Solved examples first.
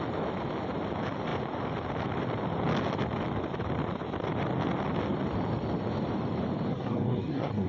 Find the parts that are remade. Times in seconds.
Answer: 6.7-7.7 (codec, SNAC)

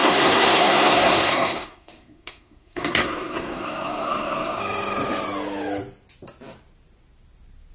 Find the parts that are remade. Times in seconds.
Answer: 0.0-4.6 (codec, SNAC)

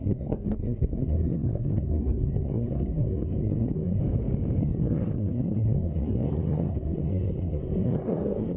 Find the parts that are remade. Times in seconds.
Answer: 0.0-4.0 (codec, SNAC); 4.6-8.6